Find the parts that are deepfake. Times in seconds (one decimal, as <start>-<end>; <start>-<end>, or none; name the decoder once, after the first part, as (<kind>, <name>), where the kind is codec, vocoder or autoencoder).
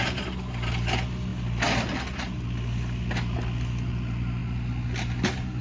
none